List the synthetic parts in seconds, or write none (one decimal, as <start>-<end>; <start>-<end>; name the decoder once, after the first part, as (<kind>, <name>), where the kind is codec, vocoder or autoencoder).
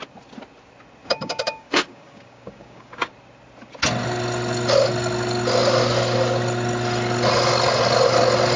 1.0-3.1 (codec, DAC)